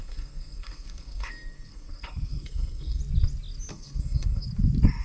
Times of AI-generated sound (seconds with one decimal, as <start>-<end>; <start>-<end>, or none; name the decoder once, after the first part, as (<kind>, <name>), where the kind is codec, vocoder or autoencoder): 0.0-3.0 (codec, SNAC); 3.7-4.4